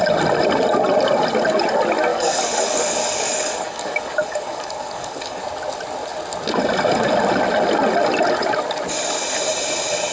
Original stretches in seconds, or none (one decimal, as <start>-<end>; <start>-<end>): 0.0-2.1; 5.4-10.1